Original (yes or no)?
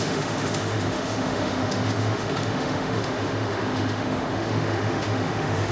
no